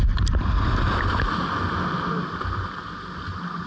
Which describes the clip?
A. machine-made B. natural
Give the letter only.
B